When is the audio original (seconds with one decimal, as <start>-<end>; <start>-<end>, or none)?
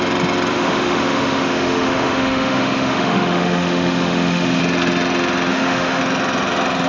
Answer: 0.0-0.5; 4.6-5.5; 6.0-6.9